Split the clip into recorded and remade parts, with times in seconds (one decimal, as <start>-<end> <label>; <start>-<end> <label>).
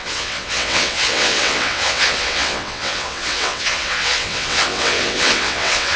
0.0-6.0 remade